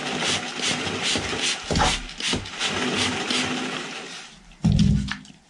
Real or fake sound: real